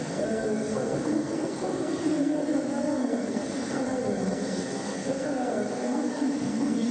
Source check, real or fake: fake